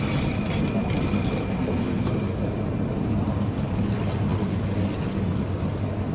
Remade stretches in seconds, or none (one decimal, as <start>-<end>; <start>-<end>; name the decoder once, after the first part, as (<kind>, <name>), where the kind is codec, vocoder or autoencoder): none